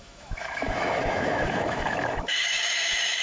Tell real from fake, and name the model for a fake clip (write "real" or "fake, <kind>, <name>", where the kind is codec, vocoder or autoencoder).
fake, autoencoder, DAC-VAE